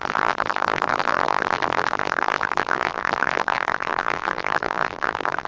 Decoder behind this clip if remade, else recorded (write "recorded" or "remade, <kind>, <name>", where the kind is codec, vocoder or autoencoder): remade, vocoder, BigVGAN v2